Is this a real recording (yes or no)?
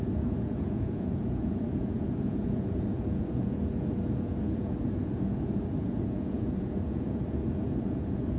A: no